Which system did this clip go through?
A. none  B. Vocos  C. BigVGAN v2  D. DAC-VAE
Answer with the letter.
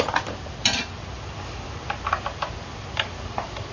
C